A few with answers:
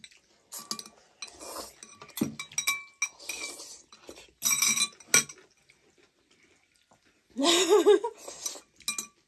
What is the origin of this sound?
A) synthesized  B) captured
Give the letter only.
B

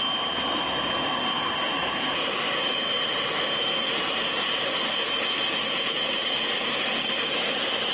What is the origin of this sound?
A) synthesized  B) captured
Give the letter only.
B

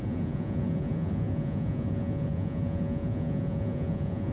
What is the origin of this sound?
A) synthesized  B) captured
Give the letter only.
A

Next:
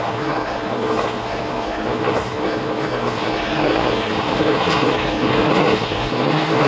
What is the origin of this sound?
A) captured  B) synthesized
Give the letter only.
B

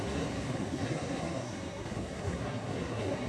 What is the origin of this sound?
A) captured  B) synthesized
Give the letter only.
B